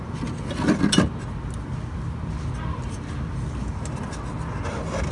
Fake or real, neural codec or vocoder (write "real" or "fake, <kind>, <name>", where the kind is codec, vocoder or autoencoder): real